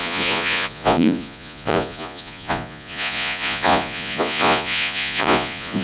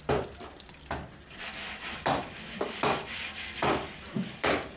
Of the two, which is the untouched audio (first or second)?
second